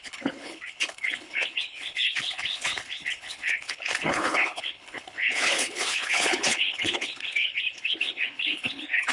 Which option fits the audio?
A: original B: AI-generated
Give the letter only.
B